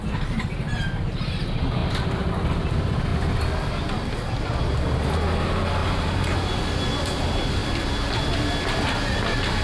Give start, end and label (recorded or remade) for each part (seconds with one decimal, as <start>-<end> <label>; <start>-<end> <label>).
0.0-1.8 recorded; 1.8-2.3 remade; 2.3-5.8 recorded; 5.8-6.8 remade; 6.8-9.6 recorded